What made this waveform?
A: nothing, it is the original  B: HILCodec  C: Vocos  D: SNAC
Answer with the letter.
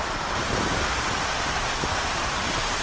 A